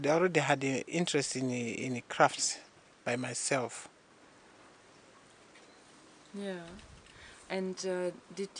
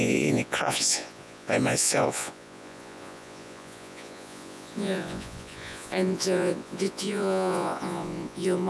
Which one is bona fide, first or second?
first